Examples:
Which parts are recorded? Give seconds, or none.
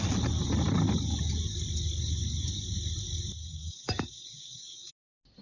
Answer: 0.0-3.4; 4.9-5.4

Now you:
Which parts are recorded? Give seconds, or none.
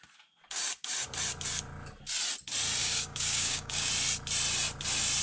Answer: 0.0-2.8; 3.9-5.2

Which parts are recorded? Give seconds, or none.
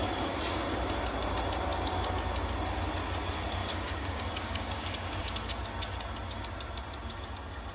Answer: 0.0-3.6; 5.2-7.7